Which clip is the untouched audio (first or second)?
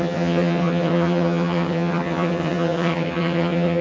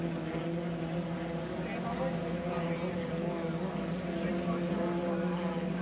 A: second